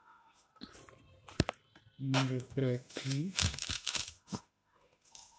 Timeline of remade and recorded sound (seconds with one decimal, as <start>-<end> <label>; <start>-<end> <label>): 0.0-0.5 remade; 0.5-2.0 recorded; 2.0-5.4 remade